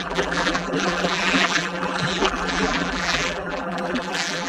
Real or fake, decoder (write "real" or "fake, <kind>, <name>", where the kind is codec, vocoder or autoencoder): fake, vocoder, BigVGAN v2